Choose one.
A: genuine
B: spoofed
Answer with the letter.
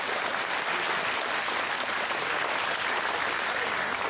A